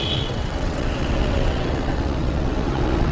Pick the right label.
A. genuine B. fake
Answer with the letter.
B